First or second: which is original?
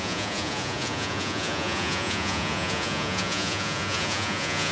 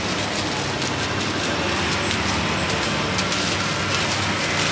second